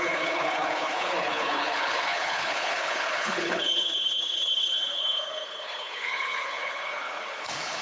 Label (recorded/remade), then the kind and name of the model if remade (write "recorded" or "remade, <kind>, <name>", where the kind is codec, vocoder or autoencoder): remade, codec, HILCodec